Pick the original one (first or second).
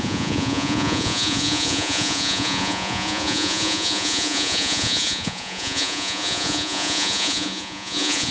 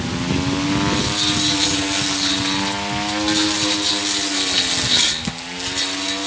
second